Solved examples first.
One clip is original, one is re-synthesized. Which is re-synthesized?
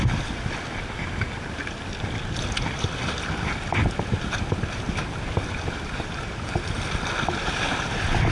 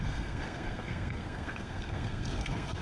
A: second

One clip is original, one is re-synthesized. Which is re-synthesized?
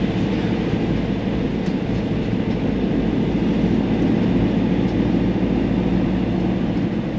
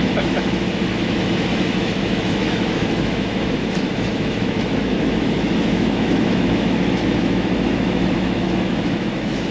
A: second